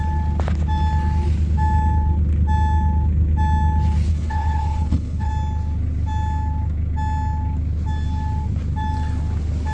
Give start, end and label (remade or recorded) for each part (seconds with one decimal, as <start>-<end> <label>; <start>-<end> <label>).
0.0-4.1 recorded; 4.1-5.3 remade; 5.3-9.7 recorded